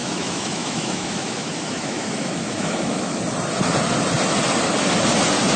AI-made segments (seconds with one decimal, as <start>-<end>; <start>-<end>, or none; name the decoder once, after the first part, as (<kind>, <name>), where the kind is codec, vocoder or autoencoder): 0.0-3.2 (autoencoder, DAC-VAE)